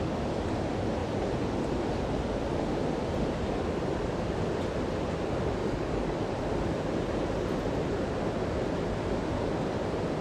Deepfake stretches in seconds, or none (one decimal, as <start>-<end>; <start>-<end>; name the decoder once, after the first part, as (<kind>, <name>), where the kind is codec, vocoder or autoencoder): 5.6-6.3 (codec, DAC)

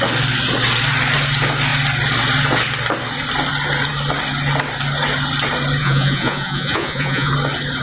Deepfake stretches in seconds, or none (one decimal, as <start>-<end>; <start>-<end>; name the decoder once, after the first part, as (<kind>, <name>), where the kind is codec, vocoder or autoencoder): 5.8-7.3 (vocoder, Vocos)

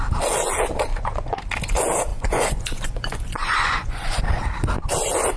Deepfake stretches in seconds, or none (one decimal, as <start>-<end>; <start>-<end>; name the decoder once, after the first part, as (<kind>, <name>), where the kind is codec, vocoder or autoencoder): 0.9-1.4 (vocoder, Vocos); 2.1-4.2

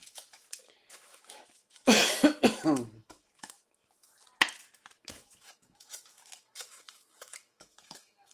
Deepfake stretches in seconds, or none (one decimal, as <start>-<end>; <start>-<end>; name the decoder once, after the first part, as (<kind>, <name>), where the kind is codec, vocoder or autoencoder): 0.0-4.1 (autoencoder, DAC-VAE); 5.0-8.3

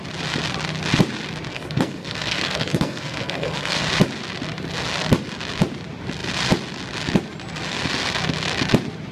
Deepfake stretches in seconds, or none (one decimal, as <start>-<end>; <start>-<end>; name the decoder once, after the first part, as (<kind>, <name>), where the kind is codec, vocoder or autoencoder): 1.5-3.8 (codec, SNAC)

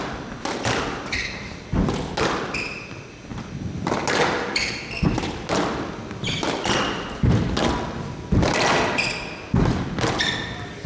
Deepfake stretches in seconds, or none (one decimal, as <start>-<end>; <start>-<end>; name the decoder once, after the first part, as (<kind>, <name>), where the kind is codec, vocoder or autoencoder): none